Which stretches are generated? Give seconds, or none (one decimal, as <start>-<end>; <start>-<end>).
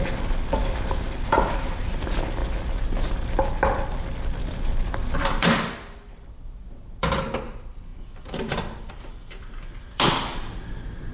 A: 0.0-10.3